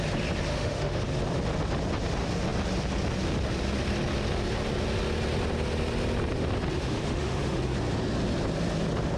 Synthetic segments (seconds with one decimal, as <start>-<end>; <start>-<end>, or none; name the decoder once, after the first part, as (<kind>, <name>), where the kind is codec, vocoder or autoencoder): 0.5-1.0 (autoencoder, DAC-VAE); 6.8-7.6